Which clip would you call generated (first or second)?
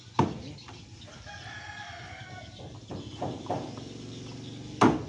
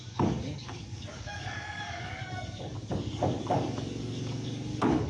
second